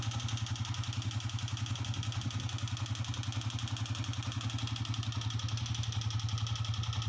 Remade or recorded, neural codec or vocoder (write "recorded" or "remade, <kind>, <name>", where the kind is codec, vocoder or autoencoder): recorded